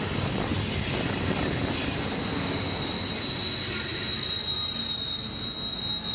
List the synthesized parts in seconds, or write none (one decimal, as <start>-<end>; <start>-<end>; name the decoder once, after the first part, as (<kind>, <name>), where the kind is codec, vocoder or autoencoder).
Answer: 0.5-2.5 (vocoder, BigVGAN v2)